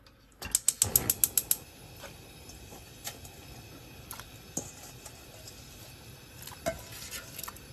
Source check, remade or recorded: recorded